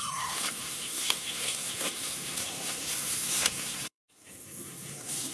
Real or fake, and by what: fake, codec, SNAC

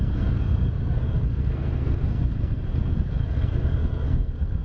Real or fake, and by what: fake, codec, SNAC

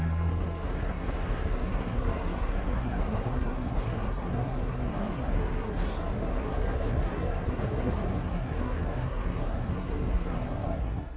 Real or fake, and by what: fake, codec, SNAC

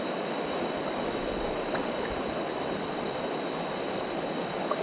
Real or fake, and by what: real